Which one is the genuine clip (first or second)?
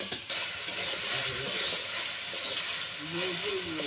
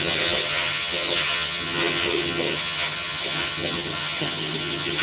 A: first